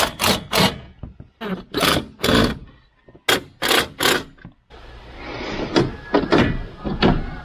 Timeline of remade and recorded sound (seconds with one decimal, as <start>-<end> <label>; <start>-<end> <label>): 0.0-7.4 recorded